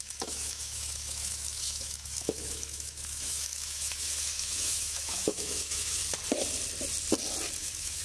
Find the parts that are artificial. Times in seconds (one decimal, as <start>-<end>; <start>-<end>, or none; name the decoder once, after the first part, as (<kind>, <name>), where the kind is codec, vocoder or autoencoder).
0.0-6.0 (autoencoder, DAC-VAE); 7.6-8.0